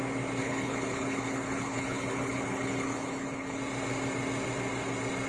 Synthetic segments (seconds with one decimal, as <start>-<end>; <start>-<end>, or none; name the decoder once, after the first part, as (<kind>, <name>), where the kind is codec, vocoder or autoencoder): 0.4-3.6 (codec, HILCodec)